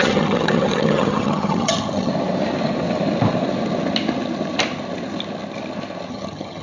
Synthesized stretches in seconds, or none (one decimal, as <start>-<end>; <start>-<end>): 0.0-2.1; 6.1-6.6